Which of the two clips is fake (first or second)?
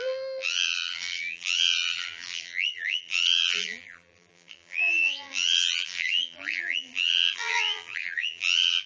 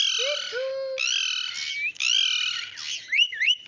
first